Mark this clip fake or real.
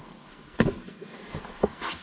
fake